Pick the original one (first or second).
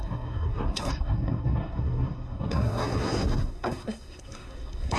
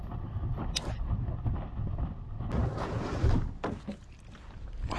second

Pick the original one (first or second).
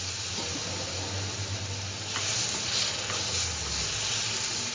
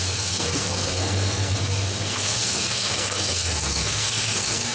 first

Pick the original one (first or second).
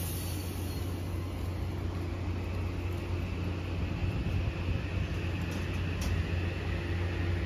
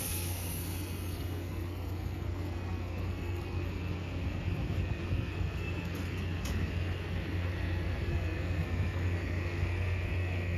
first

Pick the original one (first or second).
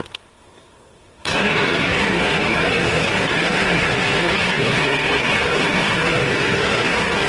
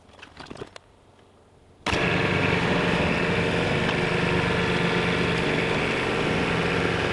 second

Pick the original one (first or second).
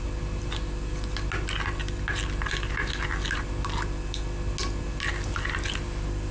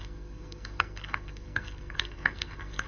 first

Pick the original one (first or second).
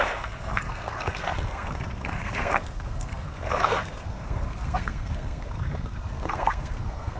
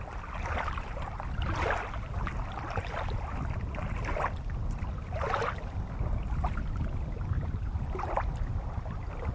second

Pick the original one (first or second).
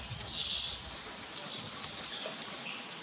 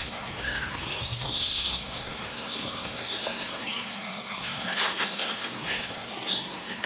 first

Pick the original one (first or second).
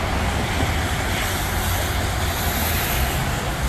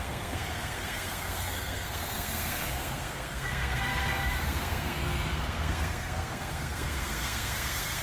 first